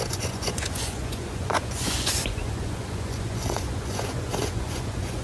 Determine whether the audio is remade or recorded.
remade